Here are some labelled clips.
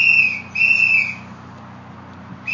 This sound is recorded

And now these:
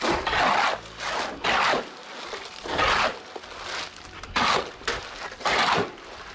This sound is recorded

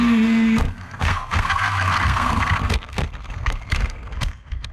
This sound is remade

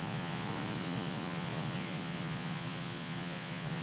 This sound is remade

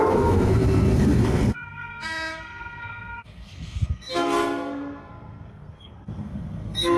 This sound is remade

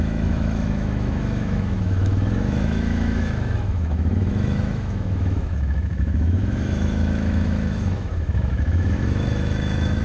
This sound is remade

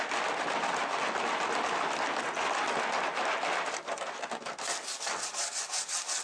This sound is recorded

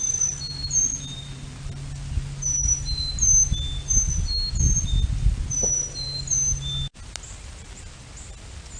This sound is recorded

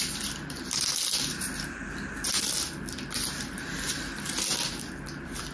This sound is recorded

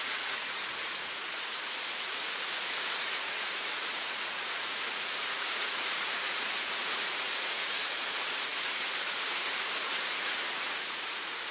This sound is remade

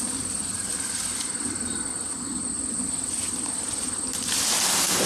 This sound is recorded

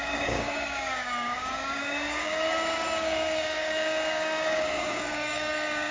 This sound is remade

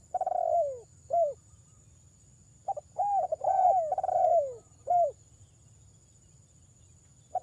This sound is recorded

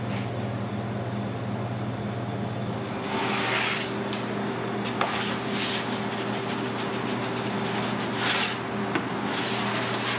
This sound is recorded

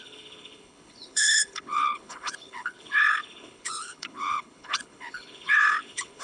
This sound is remade